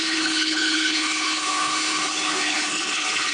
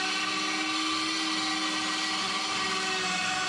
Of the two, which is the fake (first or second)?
first